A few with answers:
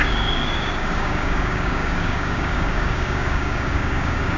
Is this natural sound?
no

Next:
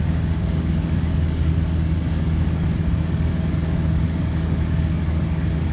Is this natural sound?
no